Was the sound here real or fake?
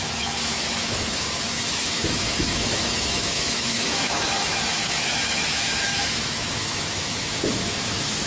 fake